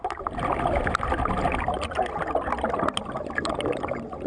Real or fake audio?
real